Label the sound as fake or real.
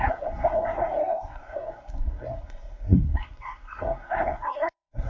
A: fake